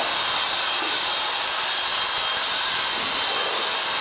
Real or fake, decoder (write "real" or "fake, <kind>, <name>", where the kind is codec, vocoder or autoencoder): fake, vocoder, BigVGAN v2